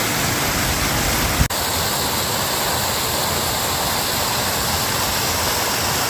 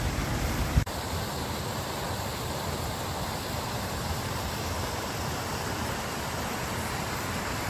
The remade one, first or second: second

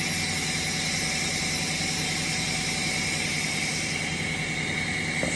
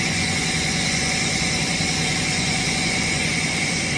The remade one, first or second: second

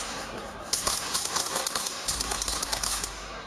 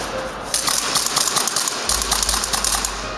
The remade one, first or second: first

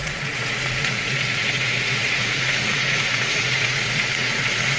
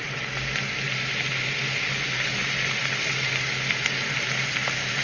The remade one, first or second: first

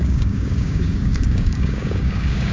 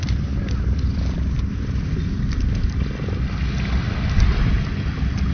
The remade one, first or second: first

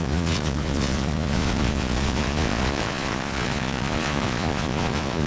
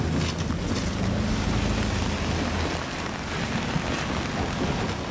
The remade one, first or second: first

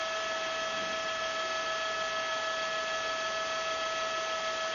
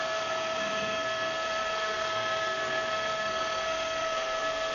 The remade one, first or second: second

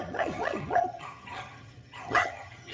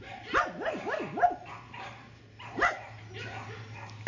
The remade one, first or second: first